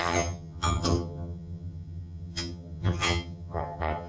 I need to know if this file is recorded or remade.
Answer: remade